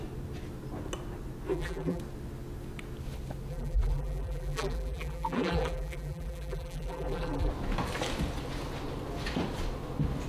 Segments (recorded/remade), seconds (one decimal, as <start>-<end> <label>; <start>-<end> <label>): 0.0-1.5 recorded; 1.5-2.0 remade; 2.0-3.5 recorded; 3.5-7.5 remade; 7.5-10.3 recorded